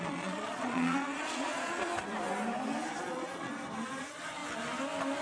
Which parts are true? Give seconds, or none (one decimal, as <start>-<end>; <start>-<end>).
1.9-3.0; 3.5-4.0; 4.4-5.2